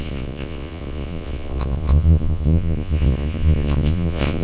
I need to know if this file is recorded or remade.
remade